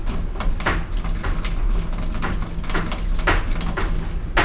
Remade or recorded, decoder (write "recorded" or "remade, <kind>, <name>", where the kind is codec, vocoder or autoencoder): recorded